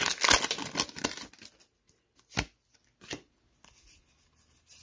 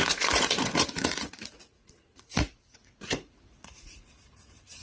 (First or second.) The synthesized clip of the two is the second